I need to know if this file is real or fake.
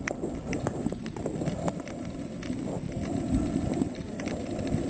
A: real